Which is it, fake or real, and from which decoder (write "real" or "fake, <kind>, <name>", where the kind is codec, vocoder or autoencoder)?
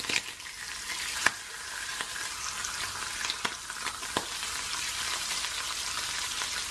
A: real